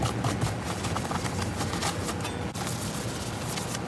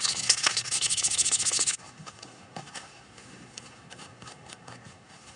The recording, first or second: first